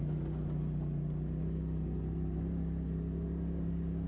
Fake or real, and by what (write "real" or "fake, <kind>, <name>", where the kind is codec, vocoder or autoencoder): real